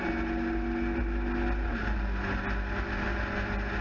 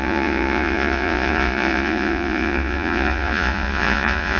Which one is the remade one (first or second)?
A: second